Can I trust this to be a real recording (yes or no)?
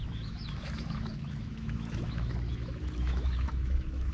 no